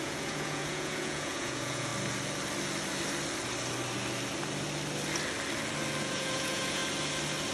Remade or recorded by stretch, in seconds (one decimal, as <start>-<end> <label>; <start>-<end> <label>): 0.0-1.9 remade; 1.9-6.0 recorded; 6.0-6.8 remade; 6.8-7.5 recorded